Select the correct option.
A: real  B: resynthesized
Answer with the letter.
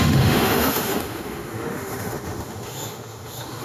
B